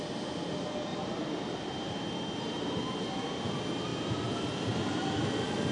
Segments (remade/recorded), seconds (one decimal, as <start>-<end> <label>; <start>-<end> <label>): 0.0-0.9 recorded; 0.9-2.8 remade; 2.8-5.7 recorded